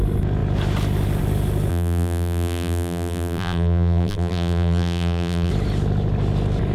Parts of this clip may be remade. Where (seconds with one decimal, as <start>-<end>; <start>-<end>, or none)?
1.7-5.5